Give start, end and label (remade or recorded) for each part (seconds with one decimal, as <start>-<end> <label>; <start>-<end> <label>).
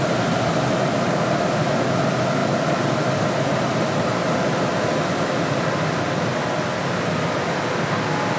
0.0-8.4 recorded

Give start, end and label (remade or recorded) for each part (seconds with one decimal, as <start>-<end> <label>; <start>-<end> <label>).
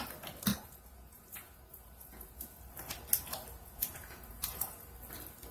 0.0-0.5 recorded; 0.5-2.6 remade; 2.6-3.6 recorded; 3.6-4.9 remade; 4.9-5.5 recorded